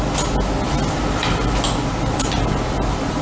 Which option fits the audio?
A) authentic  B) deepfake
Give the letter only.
A